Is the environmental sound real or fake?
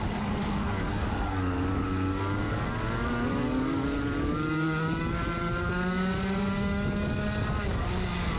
fake